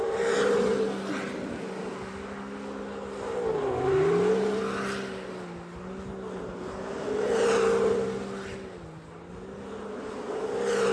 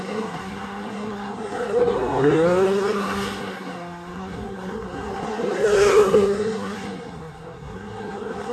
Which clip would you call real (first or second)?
first